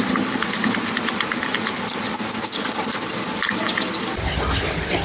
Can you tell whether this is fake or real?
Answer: real